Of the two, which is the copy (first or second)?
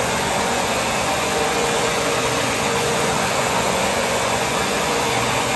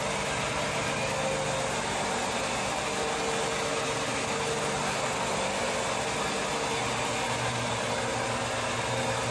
first